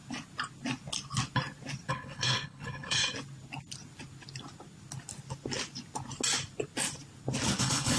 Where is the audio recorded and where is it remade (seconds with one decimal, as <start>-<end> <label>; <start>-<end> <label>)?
0.0-1.9 recorded; 1.9-3.0 remade; 3.0-7.6 recorded; 7.6-8.0 remade